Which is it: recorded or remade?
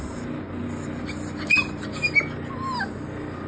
recorded